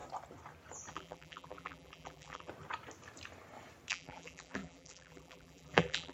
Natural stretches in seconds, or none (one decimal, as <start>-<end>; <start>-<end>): 0.0-0.9; 2.5-3.9